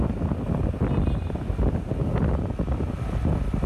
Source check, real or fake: real